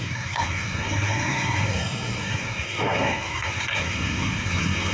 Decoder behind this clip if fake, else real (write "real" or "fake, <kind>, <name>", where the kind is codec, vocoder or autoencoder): fake, codec, SNAC